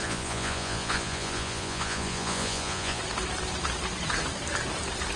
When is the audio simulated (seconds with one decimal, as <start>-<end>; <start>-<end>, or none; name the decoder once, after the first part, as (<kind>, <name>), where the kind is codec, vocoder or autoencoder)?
0.0-3.0 (vocoder, Vocos)